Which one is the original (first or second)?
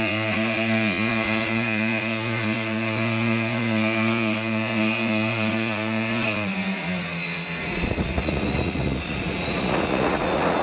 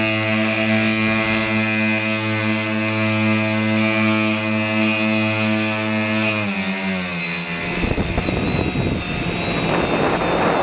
second